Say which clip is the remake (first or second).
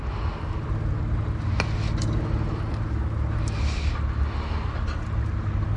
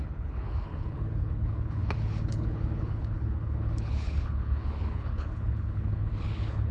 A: second